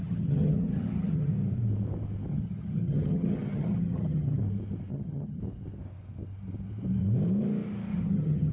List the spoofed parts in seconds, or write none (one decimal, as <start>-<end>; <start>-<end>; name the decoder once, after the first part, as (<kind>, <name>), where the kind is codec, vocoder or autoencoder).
0.0-1.3 (vocoder, HiFi-GAN); 2.3-4.4; 4.9-5.4; 7.9-8.5